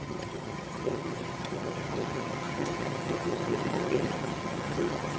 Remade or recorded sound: remade